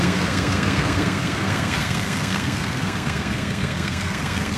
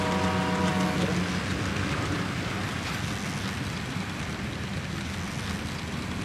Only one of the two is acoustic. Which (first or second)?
second